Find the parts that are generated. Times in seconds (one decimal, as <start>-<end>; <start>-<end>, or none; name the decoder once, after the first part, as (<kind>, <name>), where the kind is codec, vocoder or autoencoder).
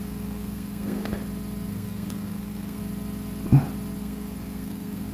0.0-1.1 (codec, SNAC); 1.7-2.8; 4.0-5.1